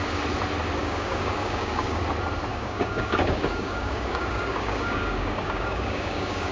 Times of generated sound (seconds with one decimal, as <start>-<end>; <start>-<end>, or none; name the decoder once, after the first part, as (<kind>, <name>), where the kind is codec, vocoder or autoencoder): 0.8-2.0 (codec, DAC); 2.5-6.5